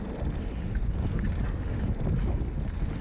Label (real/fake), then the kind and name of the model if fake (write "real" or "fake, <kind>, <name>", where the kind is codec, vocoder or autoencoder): real